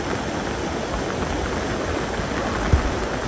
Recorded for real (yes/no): yes